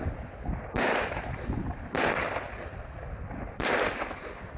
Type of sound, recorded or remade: recorded